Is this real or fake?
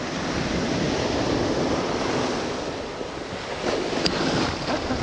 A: real